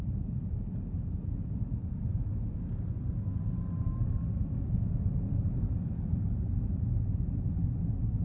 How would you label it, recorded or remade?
recorded